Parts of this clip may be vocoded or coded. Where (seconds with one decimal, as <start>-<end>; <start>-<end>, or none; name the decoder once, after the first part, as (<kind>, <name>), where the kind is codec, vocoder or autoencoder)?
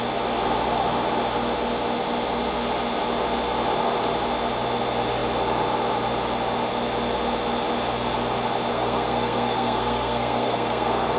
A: 8.7-11.2 (codec, SNAC)